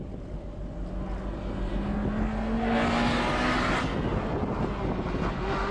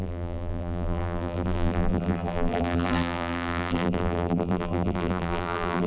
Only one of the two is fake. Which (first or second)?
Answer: second